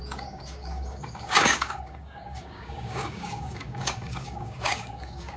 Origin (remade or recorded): remade